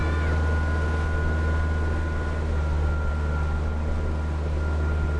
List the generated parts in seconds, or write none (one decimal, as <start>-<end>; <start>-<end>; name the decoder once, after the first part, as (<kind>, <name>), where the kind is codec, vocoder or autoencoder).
none